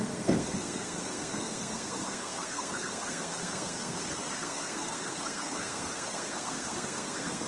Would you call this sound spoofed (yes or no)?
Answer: yes